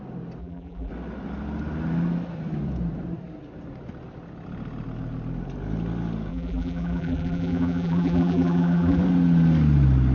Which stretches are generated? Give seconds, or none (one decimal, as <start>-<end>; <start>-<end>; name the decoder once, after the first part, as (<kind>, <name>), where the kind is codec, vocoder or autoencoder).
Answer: 0.4-0.9 (vocoder, BigVGAN v2); 6.3-9.0